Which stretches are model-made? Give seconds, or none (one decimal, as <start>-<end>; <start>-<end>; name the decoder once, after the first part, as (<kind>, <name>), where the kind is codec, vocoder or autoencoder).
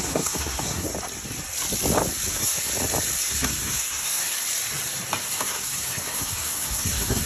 0.0-0.9 (codec, SNAC); 2.3-2.7; 3.2-4.2; 5.2-7.3